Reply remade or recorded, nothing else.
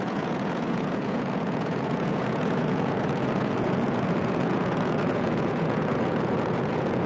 remade